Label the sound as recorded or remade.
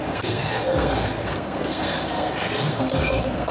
remade